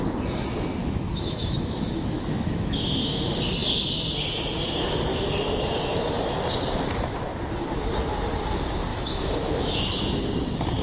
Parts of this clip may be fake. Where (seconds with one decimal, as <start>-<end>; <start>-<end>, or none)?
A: 0.8-2.9; 8.9-10.2

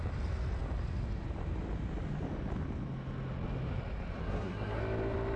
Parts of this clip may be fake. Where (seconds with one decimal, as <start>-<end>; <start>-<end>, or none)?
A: 4.2-4.8

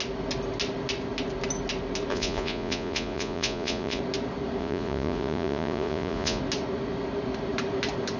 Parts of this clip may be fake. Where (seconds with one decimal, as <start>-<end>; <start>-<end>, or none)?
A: 2.1-4.0; 4.6-6.4

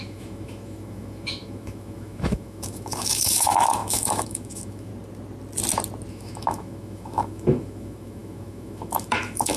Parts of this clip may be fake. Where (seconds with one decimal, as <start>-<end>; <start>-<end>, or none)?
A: 0.0-4.9; 6.1-9.6

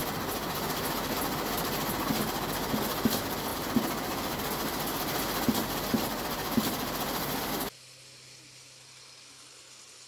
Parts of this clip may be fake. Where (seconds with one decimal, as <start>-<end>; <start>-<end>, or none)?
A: 3.5-7.5

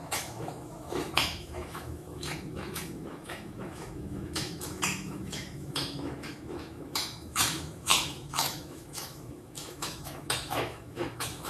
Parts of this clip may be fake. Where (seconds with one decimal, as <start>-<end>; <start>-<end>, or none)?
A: 0.0-11.5